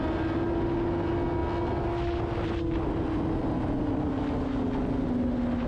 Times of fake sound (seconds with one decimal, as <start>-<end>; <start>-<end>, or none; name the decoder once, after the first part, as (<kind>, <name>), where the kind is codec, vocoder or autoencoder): none